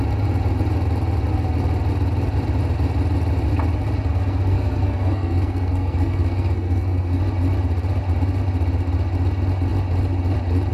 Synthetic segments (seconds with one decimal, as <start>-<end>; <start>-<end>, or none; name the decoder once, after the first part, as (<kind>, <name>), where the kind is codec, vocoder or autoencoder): 4.1-7.2 (codec, SNAC)